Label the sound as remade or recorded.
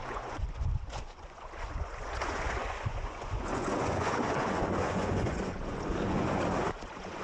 remade